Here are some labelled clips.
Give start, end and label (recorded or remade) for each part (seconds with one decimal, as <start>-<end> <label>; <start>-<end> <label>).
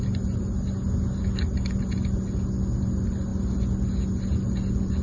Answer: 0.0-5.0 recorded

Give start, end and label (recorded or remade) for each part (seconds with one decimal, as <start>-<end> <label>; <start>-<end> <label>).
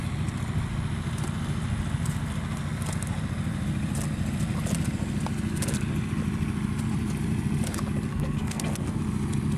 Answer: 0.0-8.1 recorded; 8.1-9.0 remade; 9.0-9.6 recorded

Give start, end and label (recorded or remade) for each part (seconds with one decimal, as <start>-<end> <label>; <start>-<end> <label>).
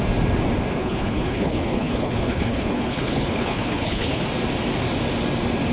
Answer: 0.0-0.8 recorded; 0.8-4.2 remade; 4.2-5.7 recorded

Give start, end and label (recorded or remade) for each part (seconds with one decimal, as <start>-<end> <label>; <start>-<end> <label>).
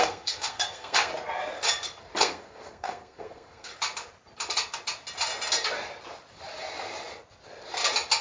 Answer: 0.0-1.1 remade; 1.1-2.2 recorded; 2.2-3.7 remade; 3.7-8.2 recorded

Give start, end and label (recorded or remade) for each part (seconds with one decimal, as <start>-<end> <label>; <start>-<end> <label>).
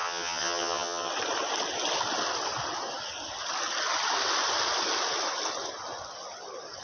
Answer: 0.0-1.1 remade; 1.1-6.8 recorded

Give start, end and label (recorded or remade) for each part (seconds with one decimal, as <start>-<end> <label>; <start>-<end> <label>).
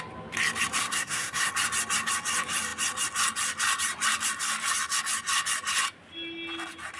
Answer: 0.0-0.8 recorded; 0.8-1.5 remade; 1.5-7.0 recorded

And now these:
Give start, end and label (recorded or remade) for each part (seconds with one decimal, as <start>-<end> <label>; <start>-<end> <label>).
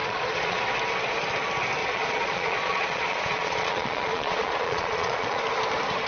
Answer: 0.0-0.6 remade; 0.6-1.8 recorded; 1.8-5.4 remade; 5.4-6.1 recorded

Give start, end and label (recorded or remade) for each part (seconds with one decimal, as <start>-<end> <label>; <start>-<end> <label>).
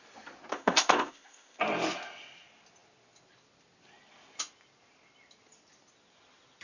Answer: 0.0-0.5 recorded; 0.5-1.6 remade; 1.6-6.6 recorded